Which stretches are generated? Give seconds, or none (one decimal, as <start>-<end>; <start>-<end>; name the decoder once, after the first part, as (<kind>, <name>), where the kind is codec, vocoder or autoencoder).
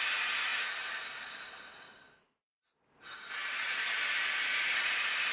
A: none